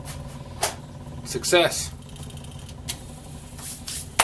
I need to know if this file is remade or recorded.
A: recorded